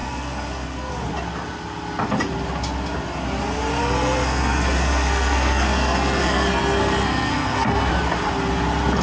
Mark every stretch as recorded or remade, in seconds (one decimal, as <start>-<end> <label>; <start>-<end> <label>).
0.0-0.9 remade; 0.9-3.8 recorded; 3.8-7.9 remade; 7.9-9.0 recorded